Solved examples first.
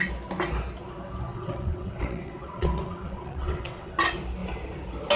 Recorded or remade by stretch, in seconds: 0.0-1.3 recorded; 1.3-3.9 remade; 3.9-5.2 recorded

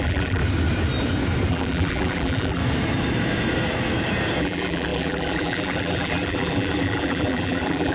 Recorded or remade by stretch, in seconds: 0.0-0.4 remade; 0.4-1.5 recorded; 1.5-2.6 remade; 2.6-4.4 recorded; 4.4-7.9 remade